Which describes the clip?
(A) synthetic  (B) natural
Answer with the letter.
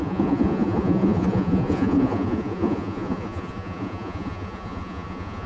A